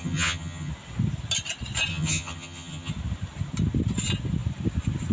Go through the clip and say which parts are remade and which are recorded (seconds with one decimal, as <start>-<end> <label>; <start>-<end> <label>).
0.0-0.7 remade; 0.7-1.9 recorded; 1.9-2.9 remade; 2.9-5.1 recorded